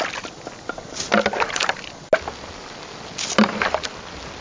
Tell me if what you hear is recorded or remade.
recorded